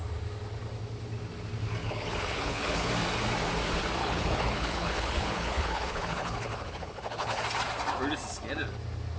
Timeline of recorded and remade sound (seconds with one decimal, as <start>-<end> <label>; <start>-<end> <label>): 0.0-1.8 recorded; 1.8-2.9 remade; 2.9-4.0 recorded; 4.0-7.4 remade; 7.4-9.2 recorded